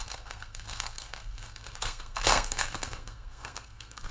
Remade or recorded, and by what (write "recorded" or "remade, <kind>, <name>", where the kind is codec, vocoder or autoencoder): remade, codec, SNAC